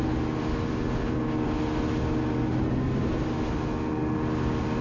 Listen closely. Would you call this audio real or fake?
real